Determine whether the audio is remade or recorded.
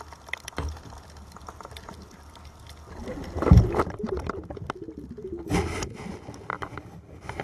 recorded